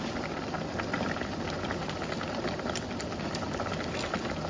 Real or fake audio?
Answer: real